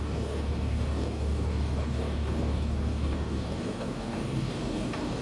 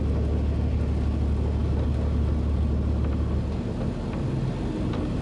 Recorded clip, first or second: second